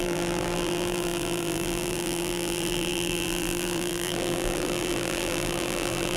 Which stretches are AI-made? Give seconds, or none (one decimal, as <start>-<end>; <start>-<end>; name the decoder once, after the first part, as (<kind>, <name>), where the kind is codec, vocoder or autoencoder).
0.0-6.2 (vocoder, BigVGAN v2)